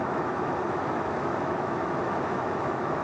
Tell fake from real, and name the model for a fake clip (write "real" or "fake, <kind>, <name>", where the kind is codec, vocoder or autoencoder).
fake, autoencoder, DAC-VAE